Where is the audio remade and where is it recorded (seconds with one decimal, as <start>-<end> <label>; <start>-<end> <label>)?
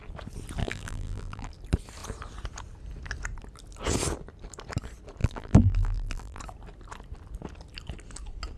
0.0-0.6 recorded; 0.6-1.5 remade; 1.5-5.2 recorded; 5.2-6.4 remade; 6.4-8.6 recorded